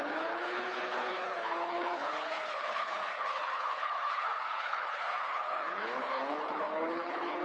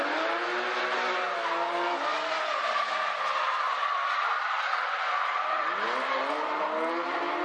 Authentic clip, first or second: second